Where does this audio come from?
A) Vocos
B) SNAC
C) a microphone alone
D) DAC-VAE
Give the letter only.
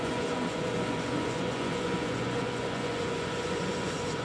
A